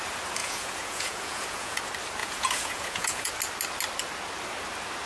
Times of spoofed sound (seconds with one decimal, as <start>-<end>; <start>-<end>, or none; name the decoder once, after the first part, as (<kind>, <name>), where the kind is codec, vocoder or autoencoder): 0.4-1.8 (vocoder, Vocos); 2.2-3.3